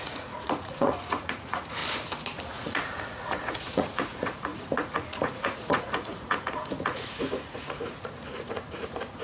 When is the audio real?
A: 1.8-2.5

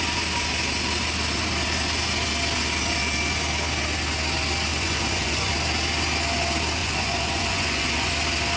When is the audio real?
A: 0.0-4.7; 5.5-6.8; 8.1-8.6

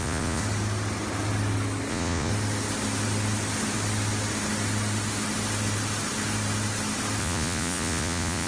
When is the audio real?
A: 0.4-1.9; 2.3-7.2

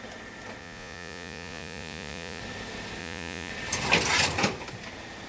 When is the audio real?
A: 0.0-0.6; 2.4-3.0; 3.5-5.3